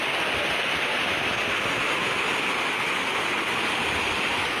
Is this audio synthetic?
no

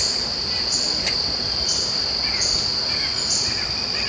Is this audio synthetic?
no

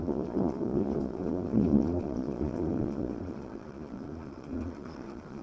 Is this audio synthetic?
yes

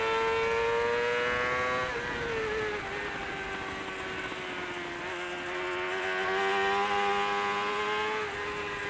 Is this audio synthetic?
no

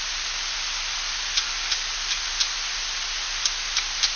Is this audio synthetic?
no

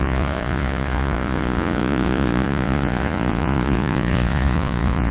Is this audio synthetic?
yes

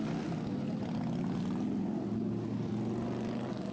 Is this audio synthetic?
no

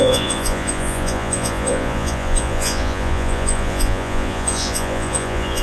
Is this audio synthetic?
yes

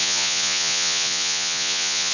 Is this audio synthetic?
yes